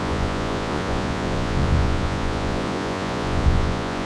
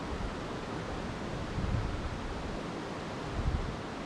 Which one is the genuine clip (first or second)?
second